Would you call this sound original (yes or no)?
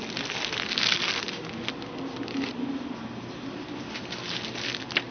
yes